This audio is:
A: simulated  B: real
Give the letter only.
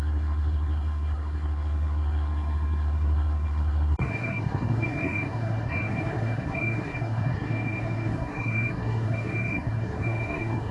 A